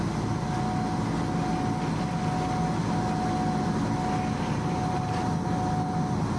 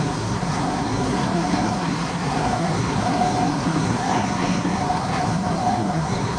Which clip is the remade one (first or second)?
second